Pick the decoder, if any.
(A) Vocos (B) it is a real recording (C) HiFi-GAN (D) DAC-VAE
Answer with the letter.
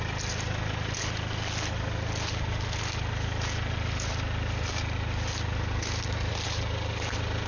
B